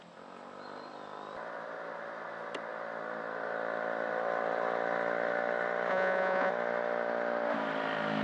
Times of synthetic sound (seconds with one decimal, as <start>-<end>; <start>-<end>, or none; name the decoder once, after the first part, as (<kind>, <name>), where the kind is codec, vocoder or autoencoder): 5.9-6.5 (vocoder, Vocos)

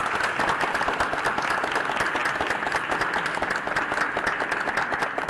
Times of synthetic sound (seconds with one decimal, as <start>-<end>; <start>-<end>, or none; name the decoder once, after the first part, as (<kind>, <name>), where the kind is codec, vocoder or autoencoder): none

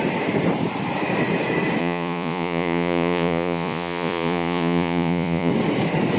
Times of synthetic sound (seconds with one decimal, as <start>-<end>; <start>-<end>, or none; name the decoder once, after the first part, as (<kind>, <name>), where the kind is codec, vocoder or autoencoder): 1.8-5.5 (vocoder, Vocos)

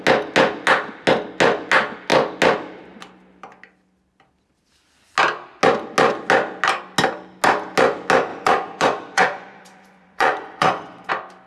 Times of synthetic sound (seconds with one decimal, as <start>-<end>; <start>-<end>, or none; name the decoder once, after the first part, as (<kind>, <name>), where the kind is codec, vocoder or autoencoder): 8.3-11.1 (vocoder, Vocos)

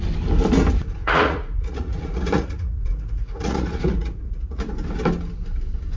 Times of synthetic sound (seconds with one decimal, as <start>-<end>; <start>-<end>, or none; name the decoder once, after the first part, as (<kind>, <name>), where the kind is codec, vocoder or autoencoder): 1.0-4.6 (vocoder, Vocos)

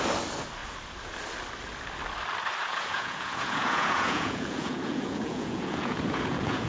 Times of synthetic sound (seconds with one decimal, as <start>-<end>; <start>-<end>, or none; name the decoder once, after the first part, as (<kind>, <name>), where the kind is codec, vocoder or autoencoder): 2.6-6.7 (vocoder, Vocos)

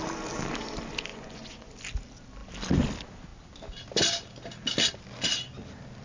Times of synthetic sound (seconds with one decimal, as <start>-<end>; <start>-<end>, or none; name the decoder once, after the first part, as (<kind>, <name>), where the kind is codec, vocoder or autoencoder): 1.1-1.7 (vocoder, Vocos)

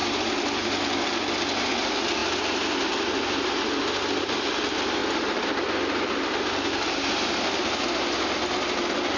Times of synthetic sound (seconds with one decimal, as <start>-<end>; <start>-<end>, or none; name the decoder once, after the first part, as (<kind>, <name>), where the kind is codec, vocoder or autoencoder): none